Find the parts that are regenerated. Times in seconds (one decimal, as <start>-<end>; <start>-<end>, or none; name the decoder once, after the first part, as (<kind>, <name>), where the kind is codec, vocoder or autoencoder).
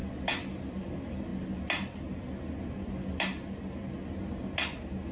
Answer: none